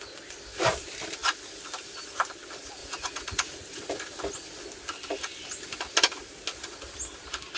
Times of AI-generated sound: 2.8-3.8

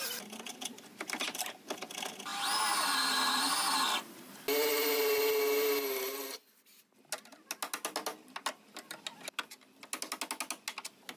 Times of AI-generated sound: none